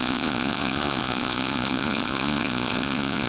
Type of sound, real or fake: fake